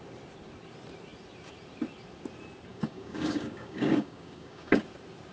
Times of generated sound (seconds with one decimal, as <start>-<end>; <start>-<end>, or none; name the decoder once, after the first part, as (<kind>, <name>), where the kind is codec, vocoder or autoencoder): 2.7-4.8 (codec, DAC)